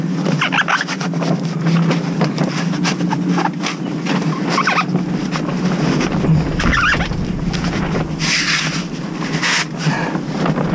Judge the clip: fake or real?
real